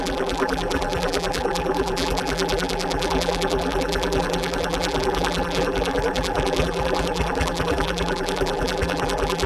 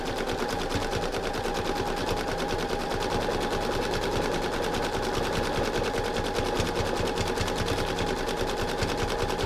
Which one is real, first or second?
second